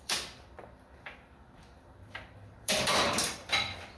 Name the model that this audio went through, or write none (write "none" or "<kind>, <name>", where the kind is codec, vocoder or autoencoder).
vocoder, BigVGAN v2